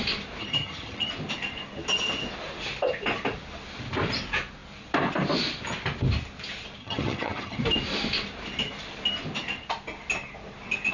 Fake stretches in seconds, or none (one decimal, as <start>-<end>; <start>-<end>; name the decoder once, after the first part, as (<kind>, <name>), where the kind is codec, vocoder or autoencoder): 0.4-1.1 (vocoder, HiFi-GAN); 6.8-7.6